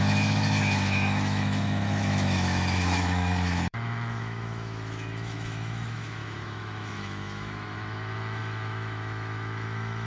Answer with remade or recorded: remade